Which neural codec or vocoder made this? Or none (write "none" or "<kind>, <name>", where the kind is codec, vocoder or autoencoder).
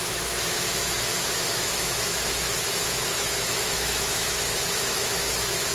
autoencoder, DAC-VAE